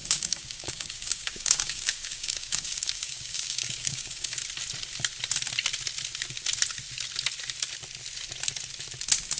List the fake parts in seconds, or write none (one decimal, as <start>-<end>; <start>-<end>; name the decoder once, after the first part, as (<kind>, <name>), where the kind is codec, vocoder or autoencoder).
0.0-4.4 (codec, DAC)